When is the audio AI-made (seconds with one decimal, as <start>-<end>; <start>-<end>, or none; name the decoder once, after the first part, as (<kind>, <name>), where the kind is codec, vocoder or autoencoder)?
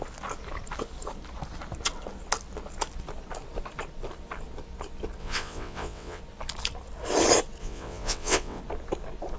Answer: 5.2-6.2 (vocoder, WaveNeXt); 7.6-8.6